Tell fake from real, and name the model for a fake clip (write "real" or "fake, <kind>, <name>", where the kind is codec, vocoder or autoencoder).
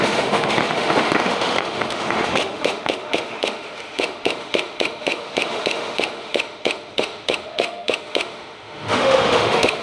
fake, autoencoder, DAC-VAE